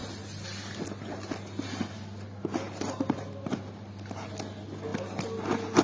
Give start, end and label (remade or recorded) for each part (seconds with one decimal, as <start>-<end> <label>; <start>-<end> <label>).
0.0-5.8 recorded